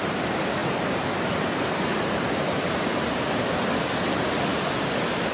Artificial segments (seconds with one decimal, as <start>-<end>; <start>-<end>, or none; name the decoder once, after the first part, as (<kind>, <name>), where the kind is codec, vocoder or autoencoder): none